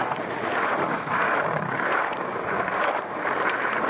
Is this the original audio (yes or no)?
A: no